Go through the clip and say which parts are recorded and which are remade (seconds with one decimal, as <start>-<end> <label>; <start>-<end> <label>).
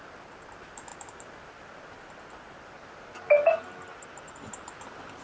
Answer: 0.0-5.2 recorded